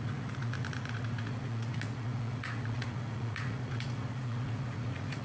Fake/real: fake